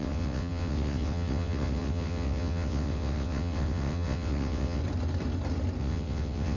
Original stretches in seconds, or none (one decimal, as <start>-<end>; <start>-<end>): 4.8-5.8